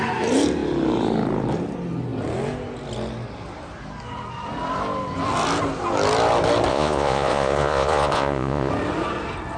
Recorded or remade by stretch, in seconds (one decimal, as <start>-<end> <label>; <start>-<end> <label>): 0.0-6.7 recorded; 6.7-8.7 remade; 8.7-9.6 recorded